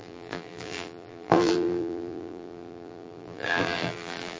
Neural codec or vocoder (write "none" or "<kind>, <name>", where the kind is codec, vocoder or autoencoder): vocoder, BigVGAN v2